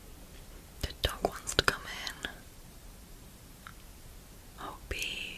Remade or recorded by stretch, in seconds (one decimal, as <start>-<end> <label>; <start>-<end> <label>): 0.0-1.6 recorded; 1.6-3.7 remade; 3.7-5.4 recorded